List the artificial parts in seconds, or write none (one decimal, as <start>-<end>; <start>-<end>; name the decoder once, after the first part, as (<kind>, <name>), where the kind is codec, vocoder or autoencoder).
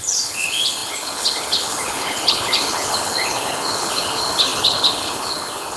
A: 0.0-5.8 (codec, HILCodec)